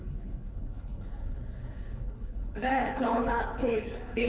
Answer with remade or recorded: remade